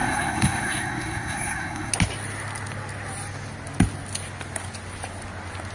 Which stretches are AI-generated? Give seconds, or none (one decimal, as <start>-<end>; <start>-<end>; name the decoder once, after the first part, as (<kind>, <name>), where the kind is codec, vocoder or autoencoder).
0.0-1.9 (codec, SNAC)